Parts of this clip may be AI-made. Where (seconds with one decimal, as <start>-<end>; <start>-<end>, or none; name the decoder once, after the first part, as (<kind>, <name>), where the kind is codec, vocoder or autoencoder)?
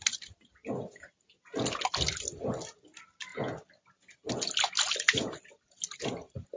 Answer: none